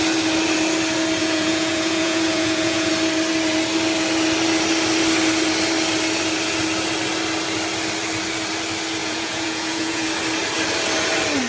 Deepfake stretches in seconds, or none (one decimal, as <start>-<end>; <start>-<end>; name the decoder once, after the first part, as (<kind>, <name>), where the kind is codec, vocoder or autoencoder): 1.2-2.9 (vocoder, Vocos); 9.0-10.1